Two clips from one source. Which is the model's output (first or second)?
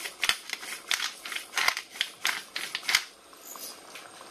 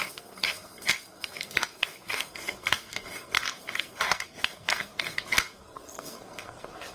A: second